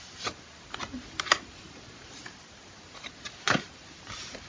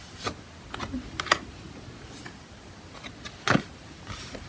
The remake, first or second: first